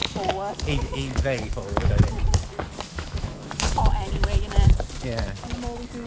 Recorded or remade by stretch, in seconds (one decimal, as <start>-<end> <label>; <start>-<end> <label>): 0.0-2.1 remade; 2.1-2.9 recorded; 2.9-3.8 remade; 3.8-6.1 recorded

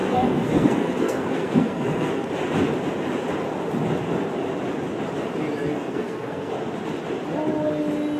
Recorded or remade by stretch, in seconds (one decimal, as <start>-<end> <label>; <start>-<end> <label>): 0.0-2.3 remade; 2.3-5.7 recorded; 5.7-6.5 remade; 6.5-8.2 recorded

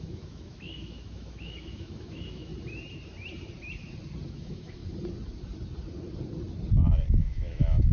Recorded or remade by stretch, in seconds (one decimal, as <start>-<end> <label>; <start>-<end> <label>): 0.0-2.5 remade; 2.5-4.3 recorded; 4.3-4.8 remade; 4.8-7.2 recorded; 7.2-7.9 remade

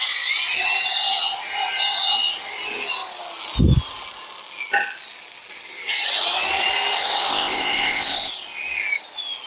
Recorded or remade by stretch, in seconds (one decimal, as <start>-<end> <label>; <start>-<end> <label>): 0.0-7.3 recorded; 7.3-8.3 remade; 8.3-9.5 recorded